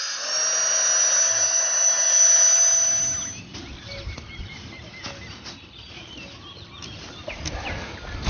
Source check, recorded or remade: recorded